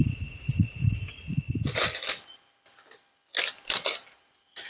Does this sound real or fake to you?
real